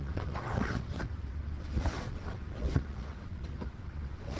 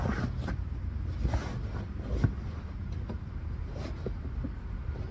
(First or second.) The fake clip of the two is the first